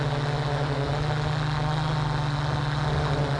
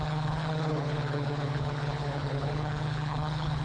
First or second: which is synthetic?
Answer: second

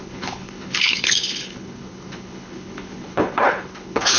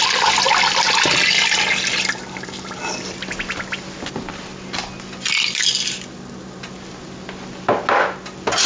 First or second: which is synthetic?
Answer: first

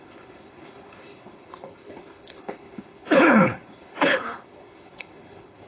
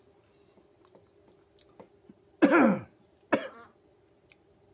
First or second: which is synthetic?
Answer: first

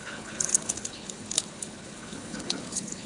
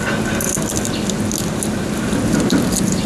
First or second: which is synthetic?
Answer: first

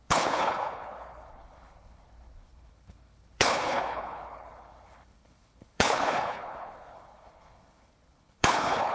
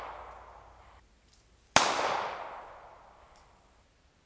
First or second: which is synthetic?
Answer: first